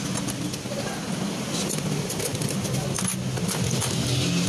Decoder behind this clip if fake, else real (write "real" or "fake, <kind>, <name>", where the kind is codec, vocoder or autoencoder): real